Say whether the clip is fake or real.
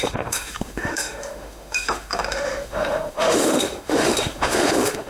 fake